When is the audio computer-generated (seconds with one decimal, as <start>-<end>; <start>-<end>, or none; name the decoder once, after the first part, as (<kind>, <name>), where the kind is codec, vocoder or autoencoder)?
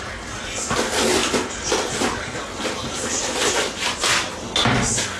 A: none